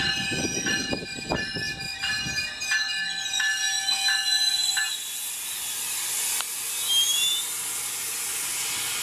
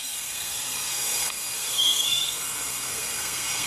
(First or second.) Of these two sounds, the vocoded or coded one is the second